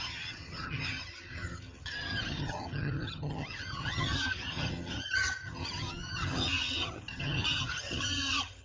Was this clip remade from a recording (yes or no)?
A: yes